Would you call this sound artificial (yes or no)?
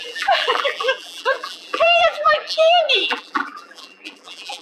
yes